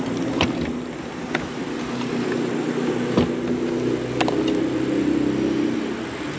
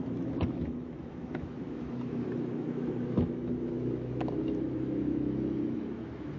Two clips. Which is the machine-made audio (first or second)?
second